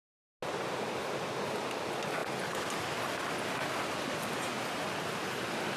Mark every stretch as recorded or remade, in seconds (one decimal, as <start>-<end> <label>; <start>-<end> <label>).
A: 0.0-5.8 recorded